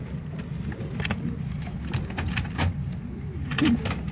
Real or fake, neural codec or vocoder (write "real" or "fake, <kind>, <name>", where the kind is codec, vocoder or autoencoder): real